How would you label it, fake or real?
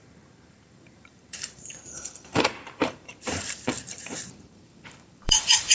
fake